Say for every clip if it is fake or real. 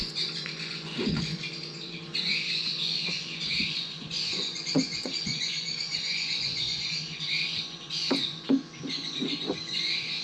fake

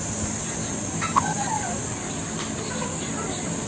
real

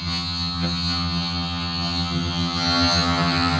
fake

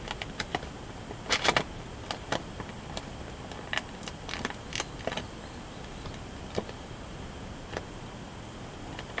real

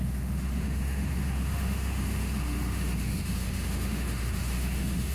fake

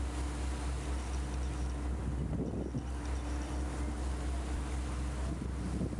real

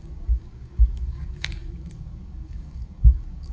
fake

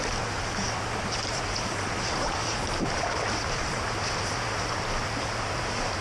real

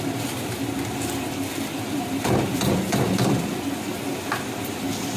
fake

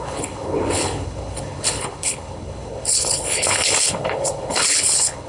fake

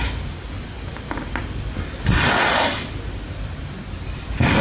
real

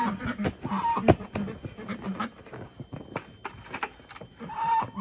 real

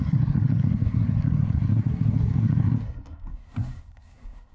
fake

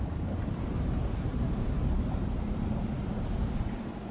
fake